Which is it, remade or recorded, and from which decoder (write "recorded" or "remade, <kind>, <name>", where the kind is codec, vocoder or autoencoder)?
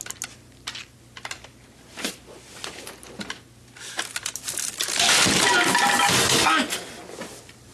recorded